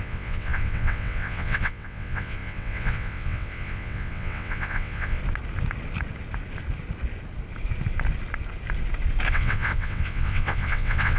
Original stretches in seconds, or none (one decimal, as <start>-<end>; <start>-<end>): 5.2-9.3